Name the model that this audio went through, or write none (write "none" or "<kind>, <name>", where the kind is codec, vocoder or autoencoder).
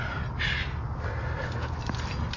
none